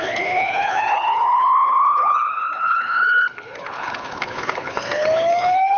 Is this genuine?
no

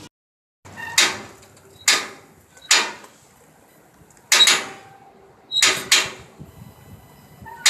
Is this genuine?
yes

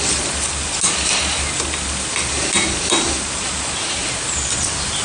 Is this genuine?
yes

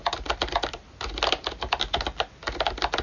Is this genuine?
yes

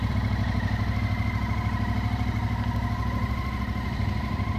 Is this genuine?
yes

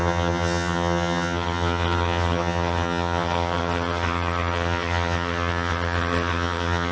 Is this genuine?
no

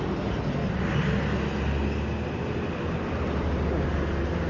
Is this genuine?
yes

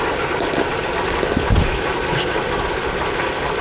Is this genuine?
yes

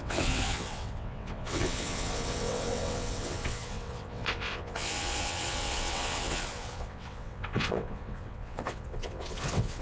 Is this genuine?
no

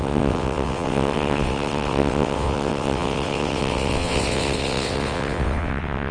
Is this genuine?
no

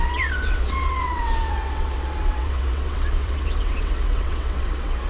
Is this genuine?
no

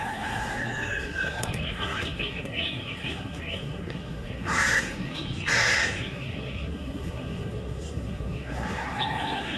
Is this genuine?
no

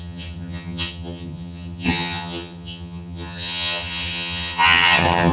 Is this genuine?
no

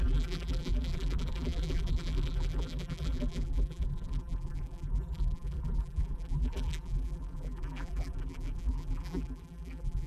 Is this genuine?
no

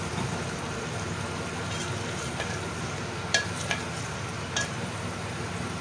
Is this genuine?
no